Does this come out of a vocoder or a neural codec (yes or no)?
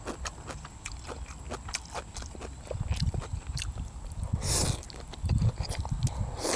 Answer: no